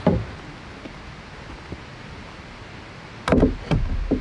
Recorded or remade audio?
recorded